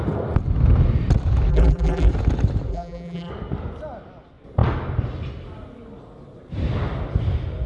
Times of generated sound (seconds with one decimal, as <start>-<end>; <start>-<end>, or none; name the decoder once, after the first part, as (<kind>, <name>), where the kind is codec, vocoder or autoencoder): 1.5-2.1 (vocoder, BigVGAN v2); 2.7-3.3